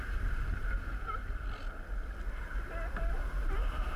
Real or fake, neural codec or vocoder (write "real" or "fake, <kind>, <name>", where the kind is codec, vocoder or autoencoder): real